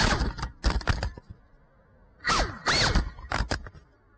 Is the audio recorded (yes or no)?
yes